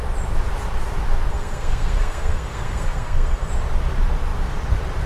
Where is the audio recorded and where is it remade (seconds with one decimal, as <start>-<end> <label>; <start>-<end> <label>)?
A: 0.0-1.3 recorded; 1.3-3.5 remade; 3.5-5.1 recorded